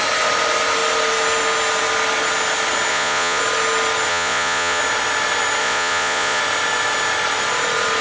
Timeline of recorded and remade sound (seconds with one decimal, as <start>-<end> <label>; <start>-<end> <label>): 0.0-2.9 recorded; 2.9-3.4 remade; 3.4-4.1 recorded; 4.1-4.8 remade; 4.8-5.6 recorded; 5.6-6.4 remade; 6.4-8.0 recorded